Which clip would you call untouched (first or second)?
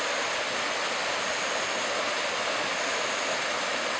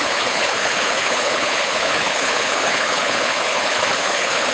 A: first